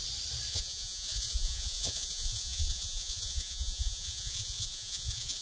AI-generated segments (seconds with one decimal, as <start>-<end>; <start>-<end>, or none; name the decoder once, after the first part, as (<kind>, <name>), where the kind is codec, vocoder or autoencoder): 0.5-5.4 (vocoder, Vocos)